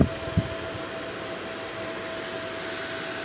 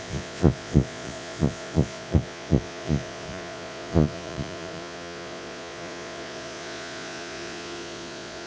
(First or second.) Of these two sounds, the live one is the first